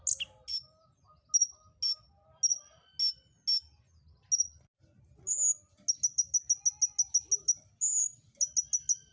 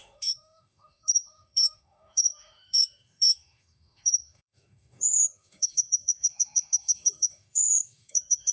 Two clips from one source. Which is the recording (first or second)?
first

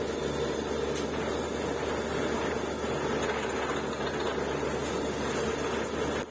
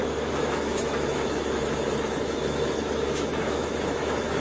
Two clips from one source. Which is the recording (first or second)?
first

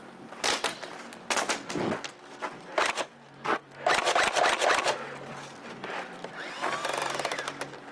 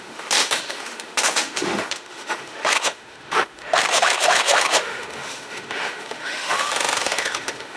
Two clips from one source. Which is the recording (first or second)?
first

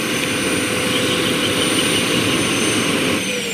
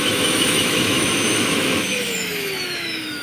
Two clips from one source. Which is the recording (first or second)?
first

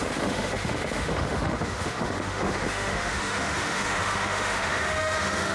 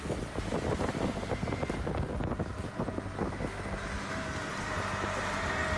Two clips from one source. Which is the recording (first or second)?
second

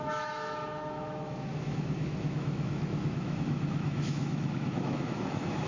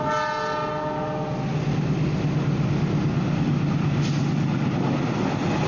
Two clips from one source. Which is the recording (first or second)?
second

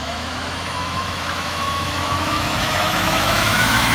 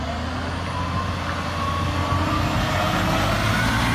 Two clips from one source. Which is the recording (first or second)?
second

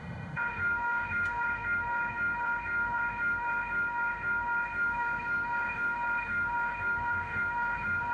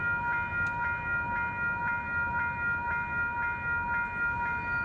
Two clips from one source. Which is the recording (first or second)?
second